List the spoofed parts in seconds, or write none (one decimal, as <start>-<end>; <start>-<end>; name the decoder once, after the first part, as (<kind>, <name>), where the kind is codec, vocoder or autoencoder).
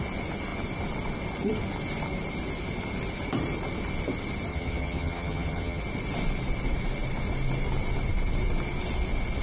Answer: 4.5-5.8 (vocoder, HiFi-GAN)